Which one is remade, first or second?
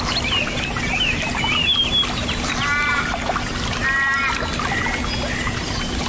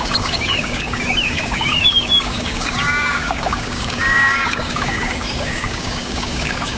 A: second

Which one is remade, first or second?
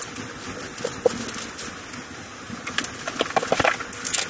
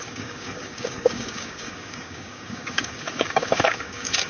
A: second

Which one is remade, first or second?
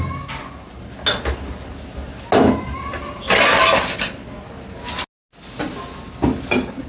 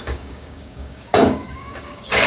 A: second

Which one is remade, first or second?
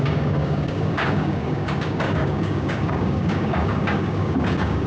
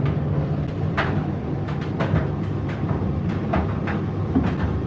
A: first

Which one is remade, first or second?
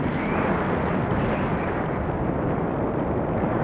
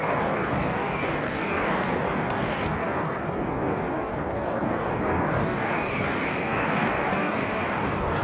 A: second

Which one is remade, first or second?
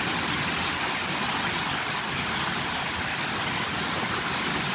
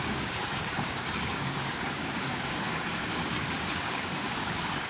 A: second